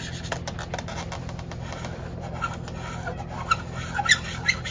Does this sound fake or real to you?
real